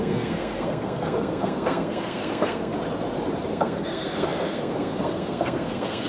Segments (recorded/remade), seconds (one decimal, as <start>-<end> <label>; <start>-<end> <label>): 0.0-2.7 remade; 2.7-3.5 recorded; 3.5-6.1 remade

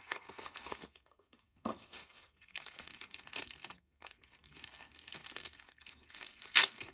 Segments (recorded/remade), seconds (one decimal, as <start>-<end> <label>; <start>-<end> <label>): 0.0-6.9 remade

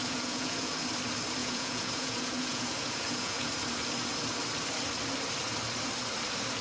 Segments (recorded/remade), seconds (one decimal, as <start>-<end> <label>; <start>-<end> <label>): 0.0-0.7 remade; 0.7-1.4 recorded; 1.4-3.5 remade; 3.5-6.6 recorded

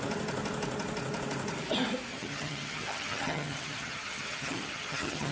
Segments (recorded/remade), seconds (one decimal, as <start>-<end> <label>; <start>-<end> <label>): 0.0-2.1 recorded; 2.1-5.3 remade

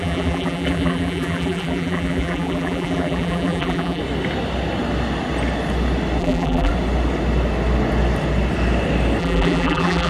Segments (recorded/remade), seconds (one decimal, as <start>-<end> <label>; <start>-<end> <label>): 0.0-4.0 remade; 4.0-6.2 recorded; 6.2-6.7 remade; 6.7-9.2 recorded; 9.2-10.1 remade

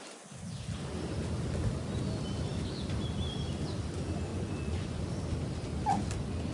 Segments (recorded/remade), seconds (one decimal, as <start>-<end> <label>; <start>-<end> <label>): 0.0-4.3 recorded; 4.3-5.0 remade; 5.0-6.5 recorded

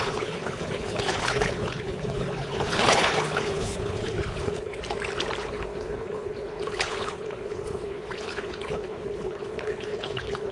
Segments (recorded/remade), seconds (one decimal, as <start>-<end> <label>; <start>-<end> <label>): 0.0-4.8 remade; 4.8-5.4 recorded; 5.4-10.5 remade